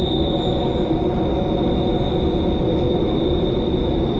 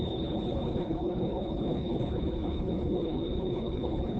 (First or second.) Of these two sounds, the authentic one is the first